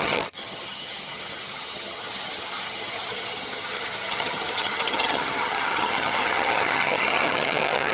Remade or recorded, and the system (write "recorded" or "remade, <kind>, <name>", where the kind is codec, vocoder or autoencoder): remade, vocoder, HiFi-GAN